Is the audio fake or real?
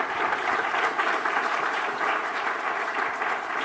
fake